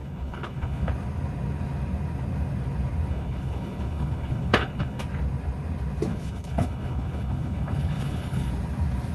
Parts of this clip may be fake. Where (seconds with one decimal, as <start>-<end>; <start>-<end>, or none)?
0.0-0.9; 3.1-5.0; 6.1-8.5